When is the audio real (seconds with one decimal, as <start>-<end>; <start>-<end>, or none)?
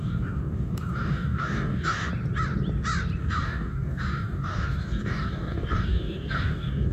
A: 2.1-3.2